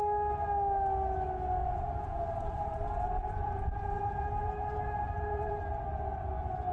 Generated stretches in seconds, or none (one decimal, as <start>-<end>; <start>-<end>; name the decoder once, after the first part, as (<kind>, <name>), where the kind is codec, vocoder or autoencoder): 1.6-5.6 (vocoder, Vocos)